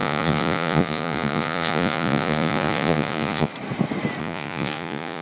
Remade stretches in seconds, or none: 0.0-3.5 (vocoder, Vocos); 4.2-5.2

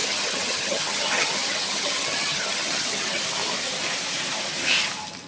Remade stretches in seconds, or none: 0.0-3.2 (vocoder, HiFi-GAN)

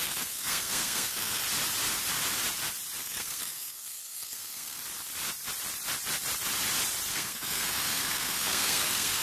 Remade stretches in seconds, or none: 0.0-1.4 (codec, SNAC); 3.0-4.8; 7.1-9.2

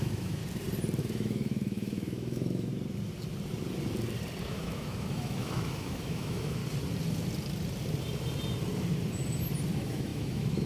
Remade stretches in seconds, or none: 0.0-0.4 (autoencoder, DAC-VAE); 1.0-2.7; 4.5-6.6; 9.7-10.7

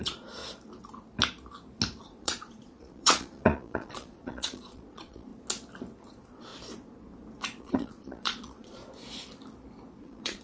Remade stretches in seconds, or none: 0.0-0.4 (vocoder, Vocos); 2.0-5.3; 6.1-6.5; 7.6-8.8; 10.0-10.4

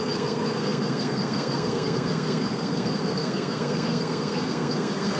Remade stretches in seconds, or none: 0.0-5.2 (codec, SNAC)

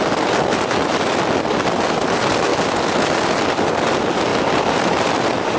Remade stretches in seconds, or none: 4.3-5.6 (vocoder, BigVGAN v2)

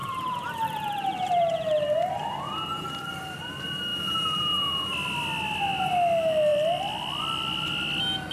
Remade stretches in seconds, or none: 0.0-3.4 (vocoder, BigVGAN v2)